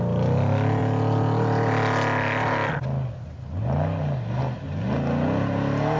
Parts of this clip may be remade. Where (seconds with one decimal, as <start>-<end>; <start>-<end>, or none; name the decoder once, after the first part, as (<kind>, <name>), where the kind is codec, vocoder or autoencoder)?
none